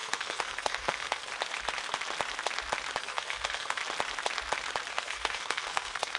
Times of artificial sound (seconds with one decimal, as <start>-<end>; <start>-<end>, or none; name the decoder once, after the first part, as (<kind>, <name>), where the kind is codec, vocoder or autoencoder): 0.0-1.3 (codec, SNAC); 3.0-3.8; 4.9-6.2